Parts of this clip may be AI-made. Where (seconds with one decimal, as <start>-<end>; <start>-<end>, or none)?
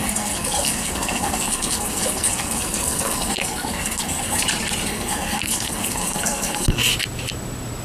0.0-4.4; 4.9-6.9